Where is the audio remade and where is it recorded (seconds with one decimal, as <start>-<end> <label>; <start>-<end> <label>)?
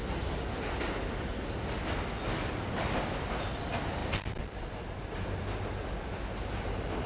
0.0-7.1 recorded